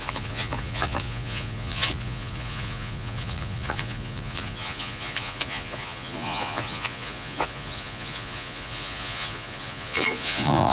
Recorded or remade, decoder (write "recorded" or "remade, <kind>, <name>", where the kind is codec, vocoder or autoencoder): remade, vocoder, Vocos